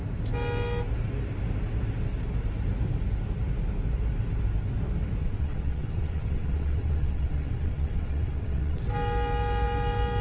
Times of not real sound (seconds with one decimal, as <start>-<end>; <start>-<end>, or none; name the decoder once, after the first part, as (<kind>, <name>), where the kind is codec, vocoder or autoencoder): 5.2-8.8 (vocoder, WaveNeXt)